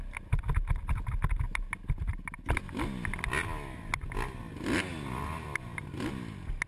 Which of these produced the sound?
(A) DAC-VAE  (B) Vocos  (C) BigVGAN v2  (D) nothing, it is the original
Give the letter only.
D